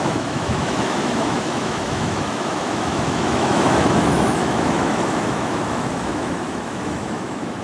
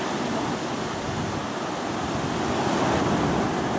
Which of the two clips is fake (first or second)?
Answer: first